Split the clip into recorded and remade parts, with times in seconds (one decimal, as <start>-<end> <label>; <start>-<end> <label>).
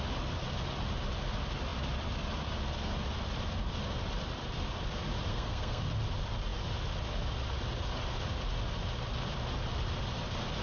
0.0-5.3 recorded; 5.3-5.8 remade; 5.8-10.6 recorded